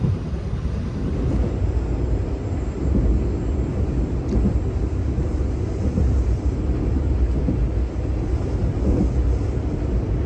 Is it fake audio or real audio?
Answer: real